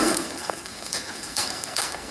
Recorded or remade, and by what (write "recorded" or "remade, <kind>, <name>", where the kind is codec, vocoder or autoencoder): remade, codec, SNAC